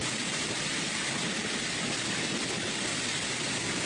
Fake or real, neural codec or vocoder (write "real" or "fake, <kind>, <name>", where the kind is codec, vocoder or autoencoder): real